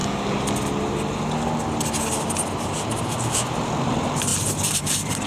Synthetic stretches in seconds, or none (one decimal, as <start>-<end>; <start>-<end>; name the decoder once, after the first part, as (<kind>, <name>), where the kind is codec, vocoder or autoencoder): 3.0-5.3 (vocoder, BigVGAN v2)